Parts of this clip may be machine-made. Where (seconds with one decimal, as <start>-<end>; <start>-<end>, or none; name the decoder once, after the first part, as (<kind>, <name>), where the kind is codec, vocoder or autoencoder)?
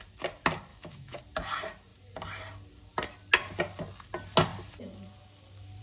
0.7-1.2 (autoencoder, DAC-VAE)